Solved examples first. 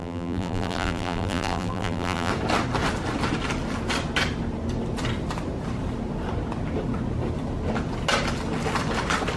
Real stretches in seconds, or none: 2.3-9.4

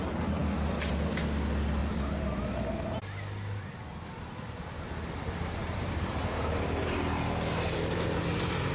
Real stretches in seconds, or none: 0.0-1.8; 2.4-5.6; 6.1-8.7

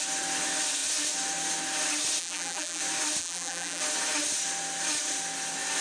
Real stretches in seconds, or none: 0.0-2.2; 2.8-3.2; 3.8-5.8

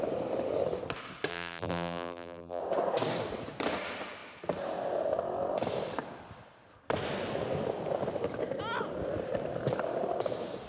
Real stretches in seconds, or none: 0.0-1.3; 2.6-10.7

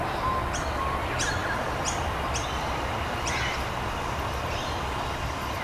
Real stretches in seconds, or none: 0.0-1.4; 2.6-5.6